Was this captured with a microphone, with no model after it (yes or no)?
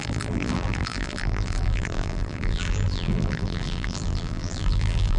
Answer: no